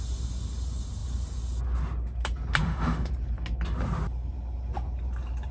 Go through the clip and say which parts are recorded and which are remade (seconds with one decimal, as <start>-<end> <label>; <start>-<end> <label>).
0.0-2.6 recorded; 2.6-3.1 remade; 3.1-5.5 recorded